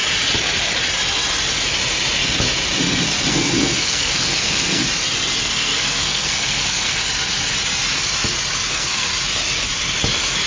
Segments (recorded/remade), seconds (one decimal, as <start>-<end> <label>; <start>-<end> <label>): 0.0-3.3 recorded; 3.3-4.8 remade; 4.8-5.4 recorded; 5.4-7.0 remade; 7.0-8.7 recorded; 8.7-9.1 remade; 9.1-10.5 recorded

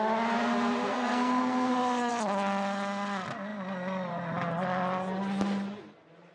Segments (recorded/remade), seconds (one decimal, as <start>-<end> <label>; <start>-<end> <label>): 0.0-0.9 recorded; 0.9-2.1 remade; 2.1-6.3 recorded

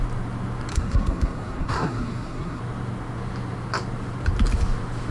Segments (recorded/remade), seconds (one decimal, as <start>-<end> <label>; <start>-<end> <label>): 0.0-0.7 recorded; 0.7-2.6 remade; 2.6-5.1 recorded

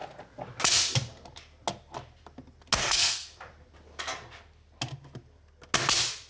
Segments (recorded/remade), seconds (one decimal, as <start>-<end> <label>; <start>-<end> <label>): 0.0-2.8 recorded; 2.8-3.4 remade; 3.4-6.3 recorded

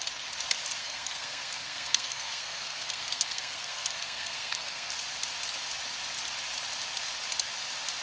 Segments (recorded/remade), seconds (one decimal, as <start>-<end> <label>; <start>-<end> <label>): 0.0-0.8 recorded; 0.8-4.9 remade; 4.9-8.0 recorded

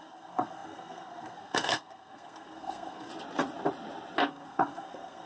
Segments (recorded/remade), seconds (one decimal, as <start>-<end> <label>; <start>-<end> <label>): 0.0-3.1 remade; 3.1-4.3 recorded; 4.3-5.3 remade

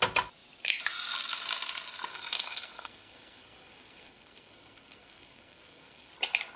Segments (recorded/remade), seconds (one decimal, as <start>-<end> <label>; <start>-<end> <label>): 0.0-2.1 recorded; 2.1-6.1 remade; 6.1-6.6 recorded